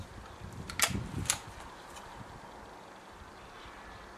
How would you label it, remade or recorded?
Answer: recorded